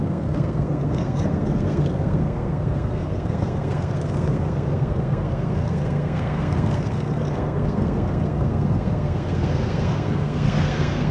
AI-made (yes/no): yes